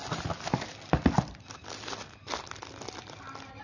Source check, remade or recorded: recorded